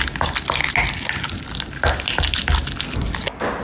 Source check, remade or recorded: recorded